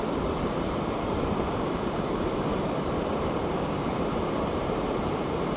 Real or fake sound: fake